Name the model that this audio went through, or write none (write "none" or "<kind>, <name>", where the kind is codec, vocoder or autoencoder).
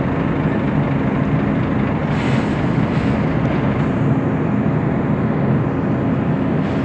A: none